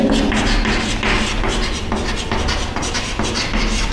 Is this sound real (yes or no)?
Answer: yes